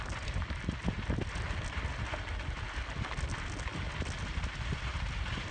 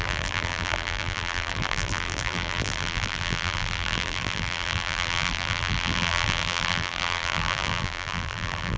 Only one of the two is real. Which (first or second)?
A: first